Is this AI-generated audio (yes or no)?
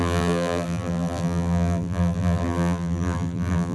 yes